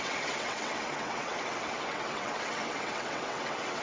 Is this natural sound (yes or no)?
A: no